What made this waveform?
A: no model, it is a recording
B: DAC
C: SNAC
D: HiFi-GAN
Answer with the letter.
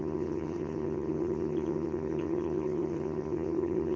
D